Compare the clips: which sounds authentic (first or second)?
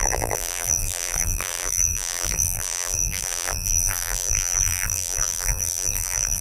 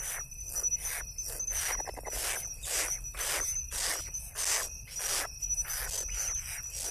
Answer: second